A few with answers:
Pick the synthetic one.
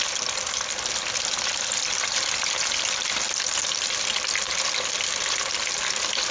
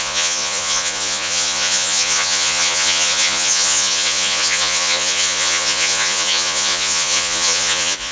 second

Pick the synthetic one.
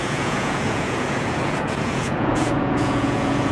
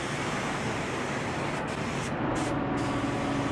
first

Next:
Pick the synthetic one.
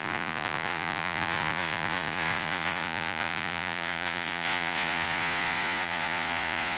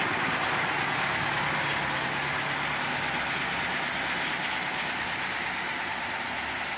first